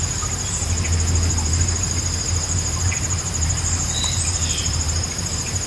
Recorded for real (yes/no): no